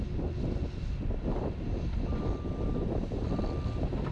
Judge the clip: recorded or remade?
recorded